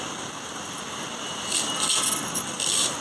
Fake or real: real